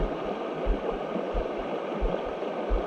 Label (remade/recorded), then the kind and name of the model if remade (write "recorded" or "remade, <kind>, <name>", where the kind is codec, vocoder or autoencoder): remade, vocoder, BigVGAN v2